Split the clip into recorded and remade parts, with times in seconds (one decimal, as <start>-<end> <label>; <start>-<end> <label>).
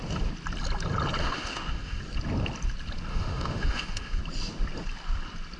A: 0.0-1.2 recorded; 1.2-2.0 remade; 2.0-3.1 recorded; 3.1-4.2 remade; 4.2-5.6 recorded